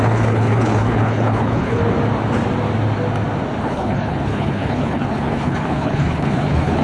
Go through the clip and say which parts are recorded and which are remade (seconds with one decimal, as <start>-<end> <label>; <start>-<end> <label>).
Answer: 0.0-1.8 remade; 1.8-3.6 recorded; 3.6-6.8 remade